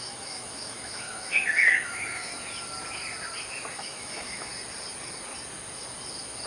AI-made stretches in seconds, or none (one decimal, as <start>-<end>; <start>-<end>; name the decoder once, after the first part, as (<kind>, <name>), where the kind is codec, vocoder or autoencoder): 0.0-2.3 (autoencoder, DAC-VAE); 3.7-4.5